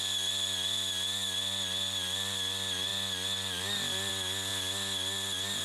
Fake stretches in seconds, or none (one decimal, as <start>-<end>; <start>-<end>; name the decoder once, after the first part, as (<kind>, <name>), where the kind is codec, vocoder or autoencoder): none